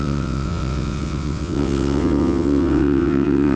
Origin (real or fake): fake